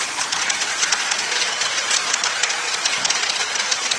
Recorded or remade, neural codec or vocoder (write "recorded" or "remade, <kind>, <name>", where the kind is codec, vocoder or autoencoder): remade, vocoder, Vocos